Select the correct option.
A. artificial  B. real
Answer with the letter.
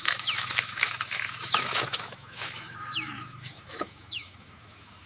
A